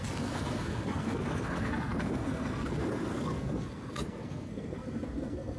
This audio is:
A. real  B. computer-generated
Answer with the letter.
B